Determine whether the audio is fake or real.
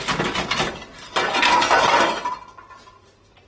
real